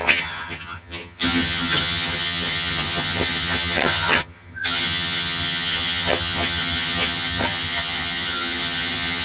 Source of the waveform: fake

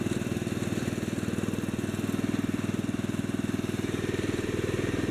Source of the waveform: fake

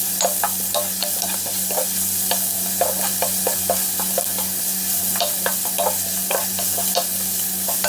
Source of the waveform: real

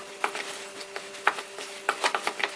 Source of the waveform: real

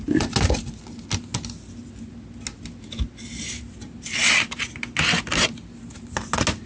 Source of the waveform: real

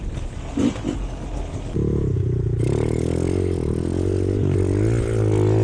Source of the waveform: real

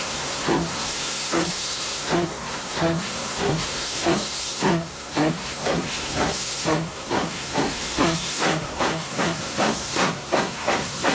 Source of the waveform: fake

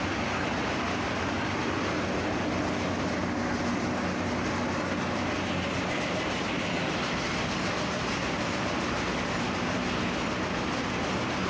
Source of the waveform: real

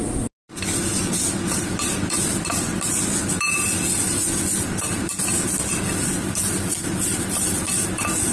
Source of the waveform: real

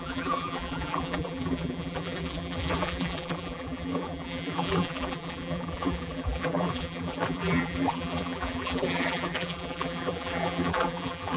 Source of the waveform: fake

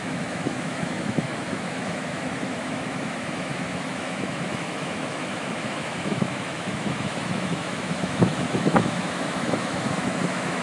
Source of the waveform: fake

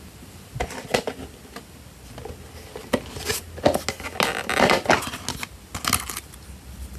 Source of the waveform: real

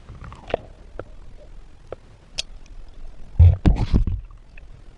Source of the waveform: real